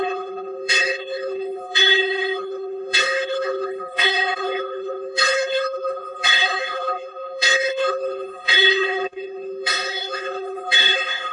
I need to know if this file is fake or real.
fake